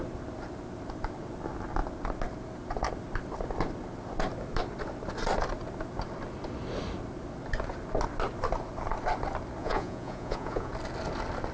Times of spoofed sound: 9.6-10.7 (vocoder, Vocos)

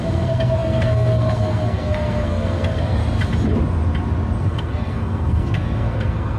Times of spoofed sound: 0.0-3.0 (codec, SNAC); 4.4-6.4

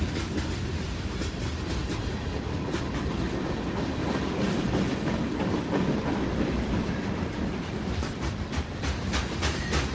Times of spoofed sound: 1.8-2.7 (vocoder, BigVGAN v2); 4.6-9.2